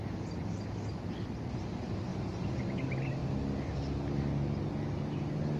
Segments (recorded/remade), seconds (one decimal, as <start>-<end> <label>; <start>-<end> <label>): 0.0-5.6 recorded